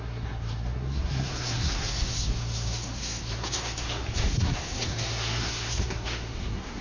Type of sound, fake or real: fake